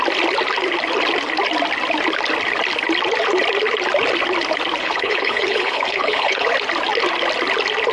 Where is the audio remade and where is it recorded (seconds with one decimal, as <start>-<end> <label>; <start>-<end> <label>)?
0.0-4.8 recorded; 4.8-6.5 remade; 6.5-7.9 recorded